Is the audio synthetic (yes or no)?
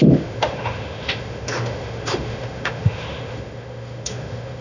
yes